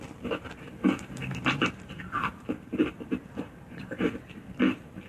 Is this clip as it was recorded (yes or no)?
no